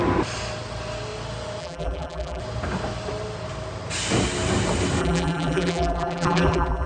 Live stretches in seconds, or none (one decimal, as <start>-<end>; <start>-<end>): 0.0-1.6; 2.4-5.0